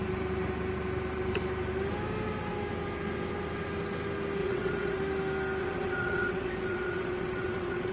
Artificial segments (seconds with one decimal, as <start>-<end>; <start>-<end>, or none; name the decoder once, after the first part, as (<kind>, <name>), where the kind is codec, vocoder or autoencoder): 4.4-5.0 (vocoder, WaveNeXt); 5.6-7.9